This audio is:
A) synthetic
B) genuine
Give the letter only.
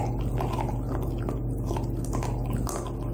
B